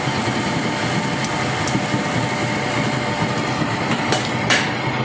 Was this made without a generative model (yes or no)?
yes